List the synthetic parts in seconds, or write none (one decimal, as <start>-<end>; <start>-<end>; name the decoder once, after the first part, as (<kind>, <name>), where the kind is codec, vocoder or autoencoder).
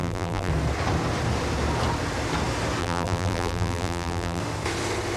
0.0-0.5 (vocoder, BigVGAN v2); 2.8-4.4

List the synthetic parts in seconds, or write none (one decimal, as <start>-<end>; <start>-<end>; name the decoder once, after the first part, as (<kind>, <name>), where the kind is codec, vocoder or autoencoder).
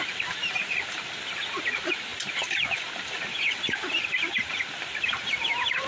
0.0-5.9 (vocoder, BigVGAN v2)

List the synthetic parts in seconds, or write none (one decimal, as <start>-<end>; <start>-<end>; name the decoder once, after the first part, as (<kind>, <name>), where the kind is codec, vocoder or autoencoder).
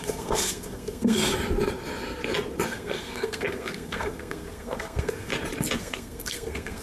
0.0-1.2 (codec, SNAC); 2.7-5.3; 5.8-6.8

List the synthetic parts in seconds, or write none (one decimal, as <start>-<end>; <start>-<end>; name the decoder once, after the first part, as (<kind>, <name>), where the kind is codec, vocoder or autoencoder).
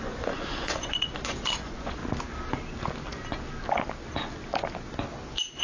0.0-2.0 (vocoder, Vocos)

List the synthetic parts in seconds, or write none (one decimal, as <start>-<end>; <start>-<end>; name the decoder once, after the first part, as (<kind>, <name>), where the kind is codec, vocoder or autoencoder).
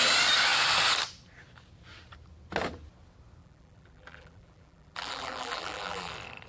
3.4-6.1 (vocoder, BigVGAN v2)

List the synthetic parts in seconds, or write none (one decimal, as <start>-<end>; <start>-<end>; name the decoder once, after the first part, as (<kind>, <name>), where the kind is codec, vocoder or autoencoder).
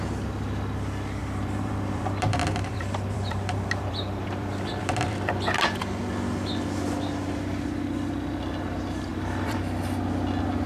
1.2-5.8 (vocoder, BigVGAN v2); 9.1-9.6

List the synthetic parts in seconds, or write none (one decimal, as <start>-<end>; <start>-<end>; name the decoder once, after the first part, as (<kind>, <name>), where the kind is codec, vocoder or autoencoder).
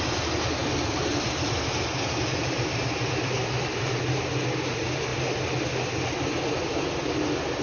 none